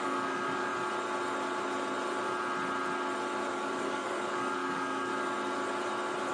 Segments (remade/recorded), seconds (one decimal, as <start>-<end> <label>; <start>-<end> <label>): 0.0-0.7 remade; 0.7-3.5 recorded; 3.5-5.1 remade; 5.1-6.3 recorded